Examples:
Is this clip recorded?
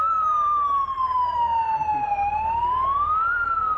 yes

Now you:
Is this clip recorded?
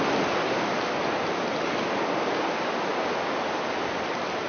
yes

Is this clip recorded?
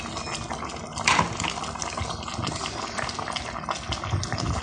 yes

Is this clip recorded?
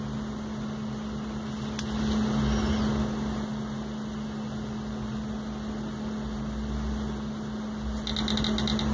yes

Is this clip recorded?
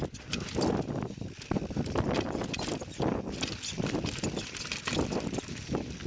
yes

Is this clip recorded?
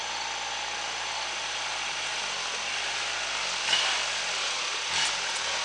yes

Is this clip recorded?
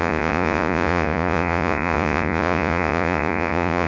no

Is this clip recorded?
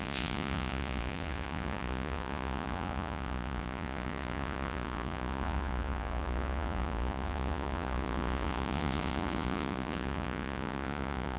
no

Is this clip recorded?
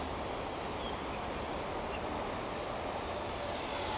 yes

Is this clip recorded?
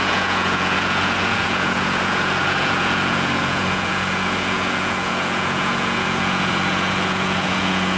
no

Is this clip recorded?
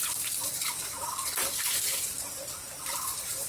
yes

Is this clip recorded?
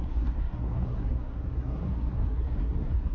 no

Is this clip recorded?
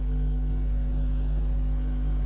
no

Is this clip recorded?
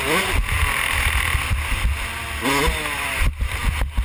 yes